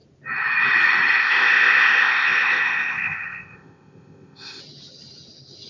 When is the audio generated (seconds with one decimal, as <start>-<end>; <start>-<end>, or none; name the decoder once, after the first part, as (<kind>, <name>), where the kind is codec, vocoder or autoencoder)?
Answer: 1.2-4.6 (codec, ZipCodec)